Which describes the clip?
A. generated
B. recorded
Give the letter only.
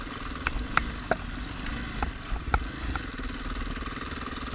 B